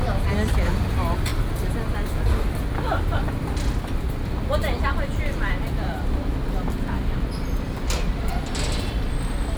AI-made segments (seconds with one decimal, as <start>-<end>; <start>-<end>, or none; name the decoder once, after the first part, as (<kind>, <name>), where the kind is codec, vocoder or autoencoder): 4.6-6.2 (vocoder, BigVGAN v2)

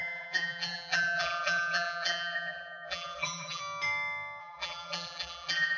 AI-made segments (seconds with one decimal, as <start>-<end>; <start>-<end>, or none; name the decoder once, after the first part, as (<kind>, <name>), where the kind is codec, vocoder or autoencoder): 0.0-3.6 (vocoder, BigVGAN v2); 4.4-5.8